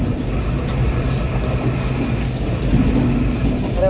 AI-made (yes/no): no